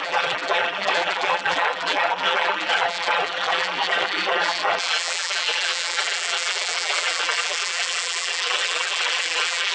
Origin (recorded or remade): remade